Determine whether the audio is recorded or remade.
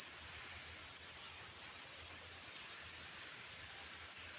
recorded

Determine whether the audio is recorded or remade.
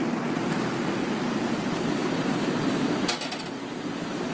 recorded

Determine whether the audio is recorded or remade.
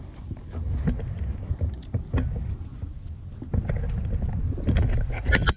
recorded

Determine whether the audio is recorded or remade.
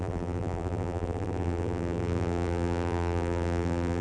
remade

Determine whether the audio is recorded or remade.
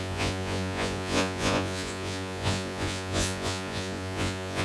remade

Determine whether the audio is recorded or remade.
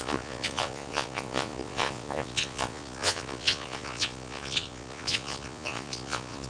remade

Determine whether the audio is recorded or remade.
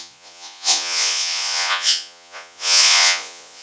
remade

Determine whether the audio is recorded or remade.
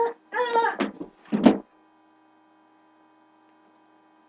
recorded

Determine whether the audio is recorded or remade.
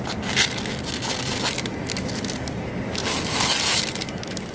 recorded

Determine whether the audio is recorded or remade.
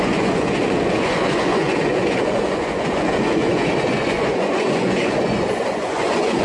remade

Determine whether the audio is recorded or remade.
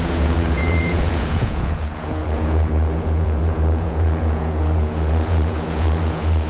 remade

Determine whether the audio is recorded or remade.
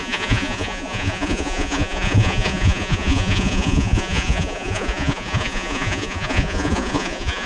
remade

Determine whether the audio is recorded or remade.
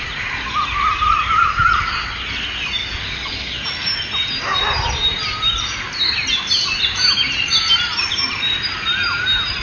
recorded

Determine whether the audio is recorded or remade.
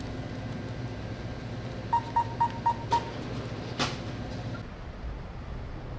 recorded